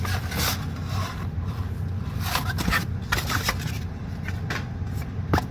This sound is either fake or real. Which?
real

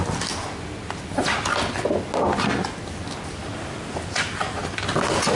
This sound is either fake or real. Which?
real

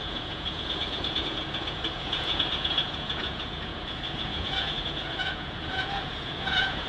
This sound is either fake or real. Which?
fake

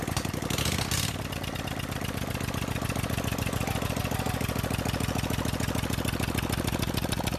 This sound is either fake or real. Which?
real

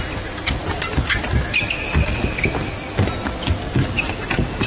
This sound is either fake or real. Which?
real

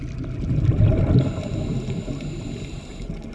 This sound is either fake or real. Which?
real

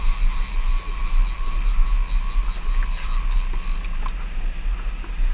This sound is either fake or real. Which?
real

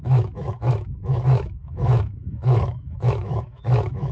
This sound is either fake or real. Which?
fake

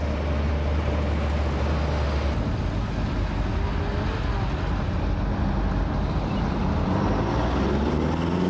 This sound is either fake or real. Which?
real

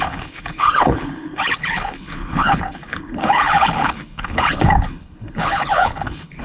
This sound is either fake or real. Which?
fake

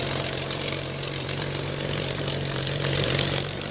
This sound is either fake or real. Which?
fake